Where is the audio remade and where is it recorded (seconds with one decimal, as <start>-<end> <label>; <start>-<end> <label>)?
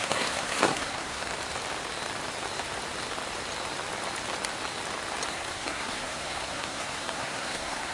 0.0-1.3 remade; 1.3-5.3 recorded; 5.3-7.9 remade